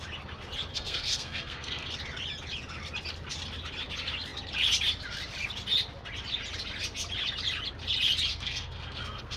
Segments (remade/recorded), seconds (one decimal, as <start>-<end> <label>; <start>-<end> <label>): 0.0-0.7 recorded; 0.7-1.9 remade; 1.9-8.3 recorded; 8.3-9.4 remade